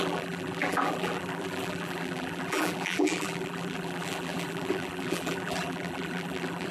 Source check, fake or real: fake